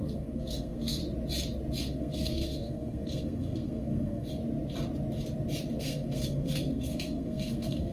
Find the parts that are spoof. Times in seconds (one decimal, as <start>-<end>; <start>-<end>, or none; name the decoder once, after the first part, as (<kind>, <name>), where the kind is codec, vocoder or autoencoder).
0.0-1.0 (codec, SNAC); 1.8-4.4; 5.8-7.9